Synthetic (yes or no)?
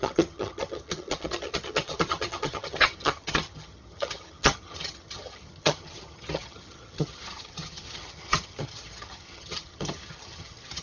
yes